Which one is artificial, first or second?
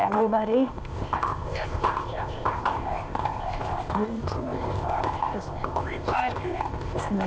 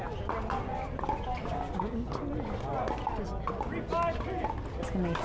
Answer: first